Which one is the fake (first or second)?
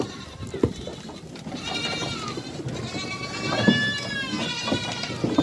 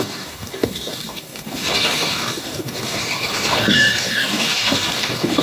second